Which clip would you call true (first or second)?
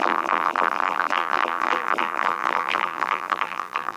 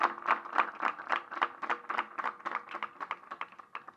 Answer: second